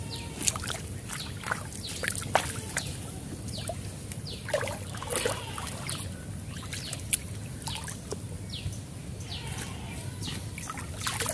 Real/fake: real